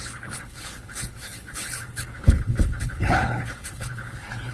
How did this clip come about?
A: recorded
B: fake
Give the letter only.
B